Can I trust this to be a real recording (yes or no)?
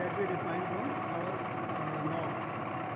yes